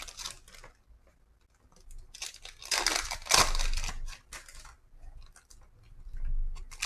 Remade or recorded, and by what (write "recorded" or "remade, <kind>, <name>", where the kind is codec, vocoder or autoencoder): recorded